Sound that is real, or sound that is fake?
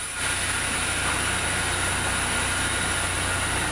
real